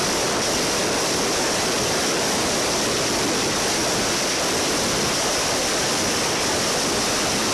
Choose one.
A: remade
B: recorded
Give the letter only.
B